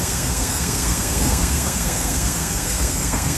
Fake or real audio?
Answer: fake